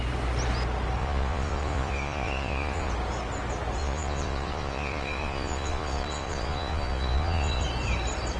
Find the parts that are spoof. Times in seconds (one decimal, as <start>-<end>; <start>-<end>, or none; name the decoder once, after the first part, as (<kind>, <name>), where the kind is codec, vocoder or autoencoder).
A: 1.0-2.9 (vocoder, Vocos); 3.8-7.6